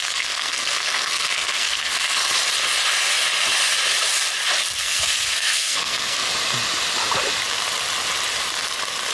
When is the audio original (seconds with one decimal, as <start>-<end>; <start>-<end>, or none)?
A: 2.2-4.8; 6.3-9.1